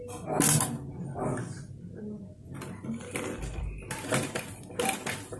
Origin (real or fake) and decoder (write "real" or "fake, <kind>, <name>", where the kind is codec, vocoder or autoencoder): real